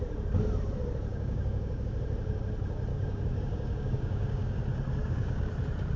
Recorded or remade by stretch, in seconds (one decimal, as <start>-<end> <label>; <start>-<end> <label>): 0.0-1.1 recorded; 1.1-1.9 remade; 1.9-2.9 recorded; 2.9-4.5 remade; 4.5-5.0 recorded; 5.0-5.5 remade; 5.5-6.0 recorded